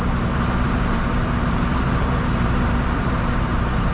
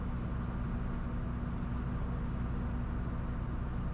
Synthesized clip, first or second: first